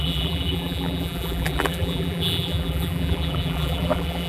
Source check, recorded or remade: remade